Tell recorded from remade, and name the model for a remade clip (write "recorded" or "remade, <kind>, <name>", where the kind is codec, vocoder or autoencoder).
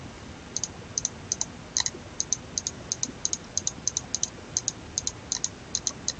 recorded